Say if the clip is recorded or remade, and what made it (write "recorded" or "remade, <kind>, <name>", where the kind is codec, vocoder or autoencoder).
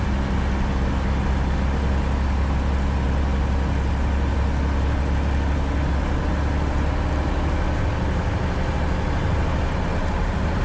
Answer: recorded